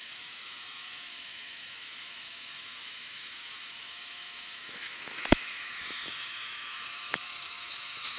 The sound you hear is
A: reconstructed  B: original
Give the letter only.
A